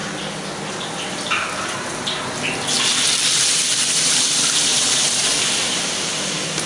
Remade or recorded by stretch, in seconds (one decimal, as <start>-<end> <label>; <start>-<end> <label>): 0.0-4.7 recorded; 4.7-6.3 remade; 6.3-6.7 recorded